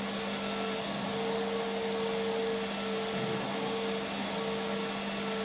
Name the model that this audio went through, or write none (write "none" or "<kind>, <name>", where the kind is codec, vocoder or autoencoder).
none